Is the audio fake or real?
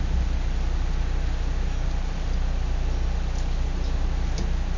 real